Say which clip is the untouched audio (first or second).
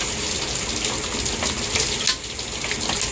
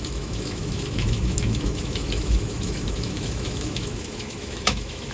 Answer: first